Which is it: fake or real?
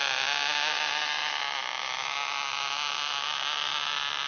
real